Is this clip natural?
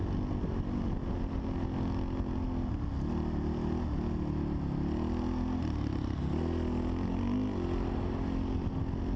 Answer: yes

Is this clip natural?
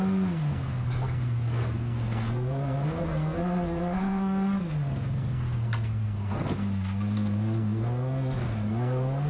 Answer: no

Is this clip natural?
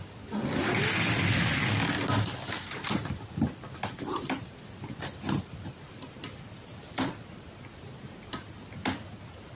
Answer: yes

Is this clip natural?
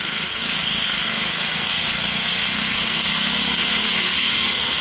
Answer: no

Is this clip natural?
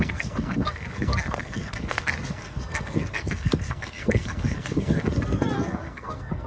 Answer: no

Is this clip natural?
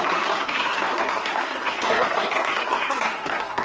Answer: no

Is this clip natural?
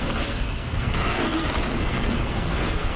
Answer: no